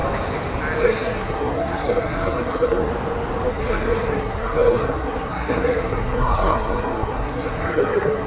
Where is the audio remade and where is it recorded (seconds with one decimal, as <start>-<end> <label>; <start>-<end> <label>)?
0.0-0.8 recorded; 0.8-2.9 remade; 2.9-3.5 recorded; 3.5-8.3 remade